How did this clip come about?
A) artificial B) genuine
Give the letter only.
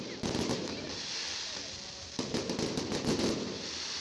B